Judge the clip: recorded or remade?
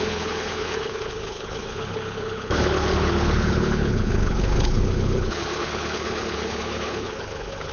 remade